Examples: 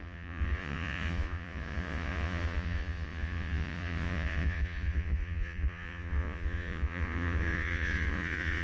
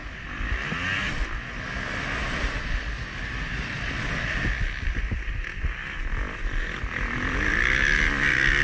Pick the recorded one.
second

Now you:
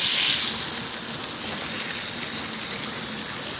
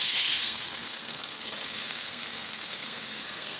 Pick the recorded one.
first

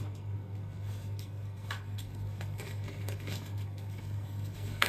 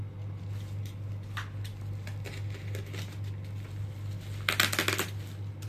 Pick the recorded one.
second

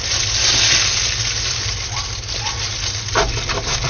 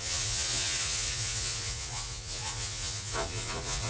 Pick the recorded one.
first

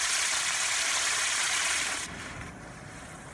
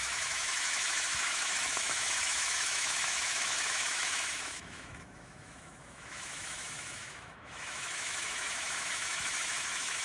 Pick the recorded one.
first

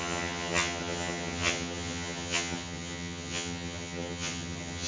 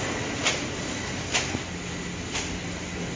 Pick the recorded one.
second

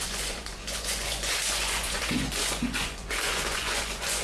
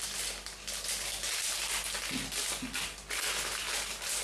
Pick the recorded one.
second